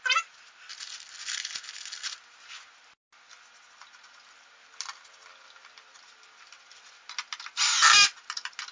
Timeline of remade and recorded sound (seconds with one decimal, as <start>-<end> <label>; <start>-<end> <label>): 0.0-8.7 recorded